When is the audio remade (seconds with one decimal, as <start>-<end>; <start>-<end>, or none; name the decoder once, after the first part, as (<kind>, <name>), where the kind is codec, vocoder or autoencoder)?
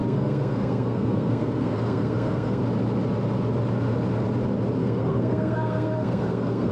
0.0-2.6 (codec, SNAC); 4.8-6.7